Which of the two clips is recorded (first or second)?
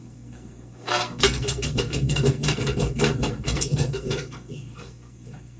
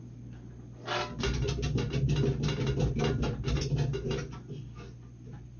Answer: second